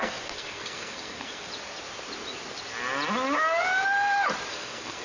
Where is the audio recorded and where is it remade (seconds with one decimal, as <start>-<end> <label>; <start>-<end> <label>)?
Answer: 0.0-1.5 remade; 1.5-4.5 recorded; 4.5-5.0 remade